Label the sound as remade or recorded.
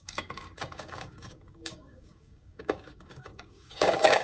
remade